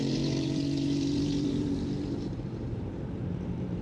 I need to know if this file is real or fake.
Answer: fake